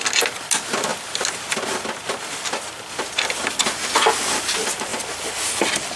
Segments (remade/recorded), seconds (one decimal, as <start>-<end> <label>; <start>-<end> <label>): 0.0-6.0 recorded